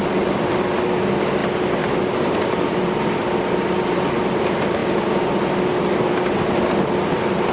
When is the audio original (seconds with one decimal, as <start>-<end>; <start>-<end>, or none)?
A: 0.0-7.5